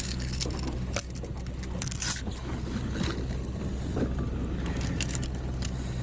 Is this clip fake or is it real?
real